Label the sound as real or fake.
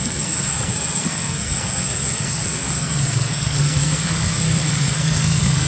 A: fake